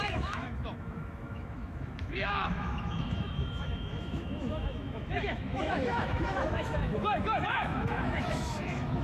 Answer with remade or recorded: remade